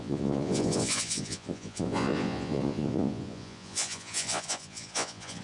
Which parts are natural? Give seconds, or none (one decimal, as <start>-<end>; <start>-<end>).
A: none